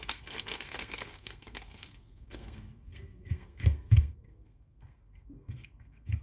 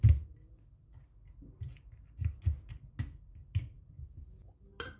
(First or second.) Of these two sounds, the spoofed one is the first